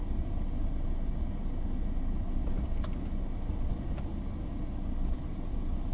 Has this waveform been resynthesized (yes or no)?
no